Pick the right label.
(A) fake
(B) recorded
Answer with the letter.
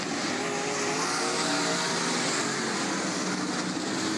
B